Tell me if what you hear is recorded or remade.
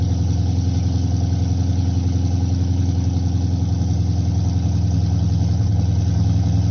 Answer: recorded